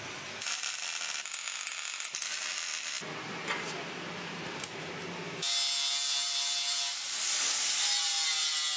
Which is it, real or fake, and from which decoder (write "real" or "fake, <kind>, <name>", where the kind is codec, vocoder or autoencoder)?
real